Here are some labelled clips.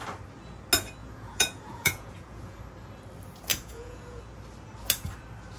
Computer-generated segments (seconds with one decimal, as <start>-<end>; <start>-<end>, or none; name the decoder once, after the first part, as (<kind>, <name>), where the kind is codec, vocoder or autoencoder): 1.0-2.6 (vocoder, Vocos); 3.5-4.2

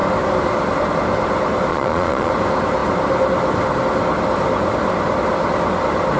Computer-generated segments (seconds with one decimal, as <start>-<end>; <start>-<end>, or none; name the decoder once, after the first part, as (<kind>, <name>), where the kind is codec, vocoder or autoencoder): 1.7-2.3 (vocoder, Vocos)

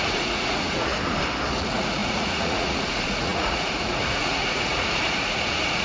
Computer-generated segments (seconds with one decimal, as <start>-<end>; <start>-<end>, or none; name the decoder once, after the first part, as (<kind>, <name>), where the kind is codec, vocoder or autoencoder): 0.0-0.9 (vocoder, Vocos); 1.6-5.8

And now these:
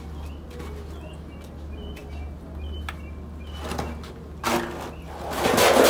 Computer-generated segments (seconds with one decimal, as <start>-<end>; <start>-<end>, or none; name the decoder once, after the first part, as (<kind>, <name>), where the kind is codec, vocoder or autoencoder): none